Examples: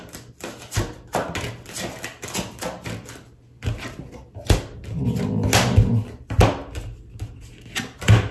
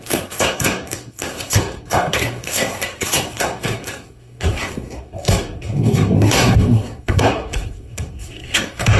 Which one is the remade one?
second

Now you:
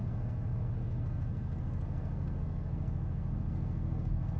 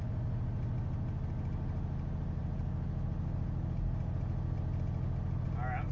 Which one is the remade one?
first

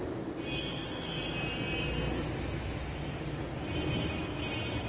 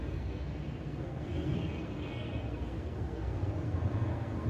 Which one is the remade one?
second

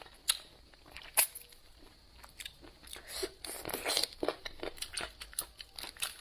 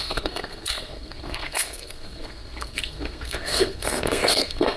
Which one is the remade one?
second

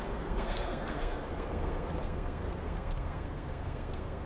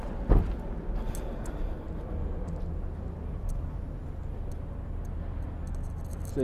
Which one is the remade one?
first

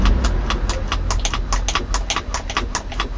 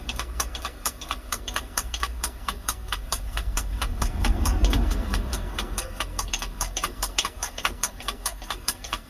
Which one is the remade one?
second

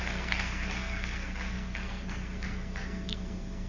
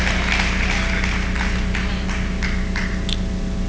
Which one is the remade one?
first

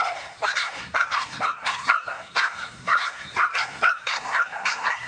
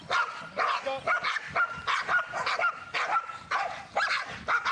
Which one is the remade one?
first